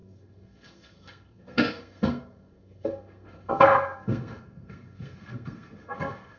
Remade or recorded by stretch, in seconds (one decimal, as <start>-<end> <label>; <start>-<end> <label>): 0.0-6.4 remade